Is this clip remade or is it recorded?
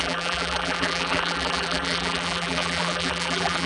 remade